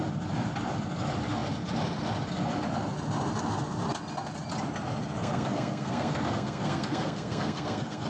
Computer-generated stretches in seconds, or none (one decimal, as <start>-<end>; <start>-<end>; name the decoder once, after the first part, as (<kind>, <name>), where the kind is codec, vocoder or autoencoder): 5.2-8.1 (codec, SNAC)